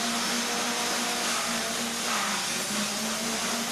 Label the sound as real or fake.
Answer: real